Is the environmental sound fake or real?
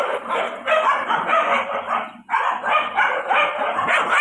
fake